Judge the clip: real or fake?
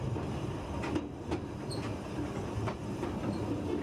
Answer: real